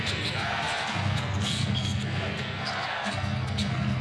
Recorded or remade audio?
remade